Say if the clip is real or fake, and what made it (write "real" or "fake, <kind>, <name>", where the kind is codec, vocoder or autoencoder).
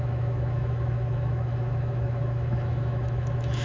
fake, autoencoder, DAC-VAE